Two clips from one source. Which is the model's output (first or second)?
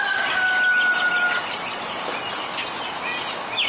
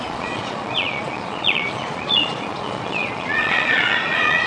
second